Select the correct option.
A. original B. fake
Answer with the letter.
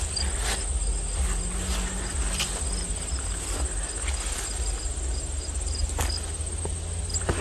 A